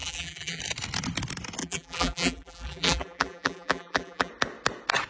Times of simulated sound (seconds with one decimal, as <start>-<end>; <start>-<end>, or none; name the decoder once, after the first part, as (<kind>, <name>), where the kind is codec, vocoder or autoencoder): 0.0-0.6 (vocoder, BigVGAN v2); 1.6-4.3